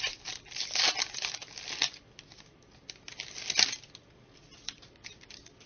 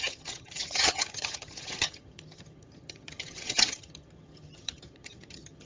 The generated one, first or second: second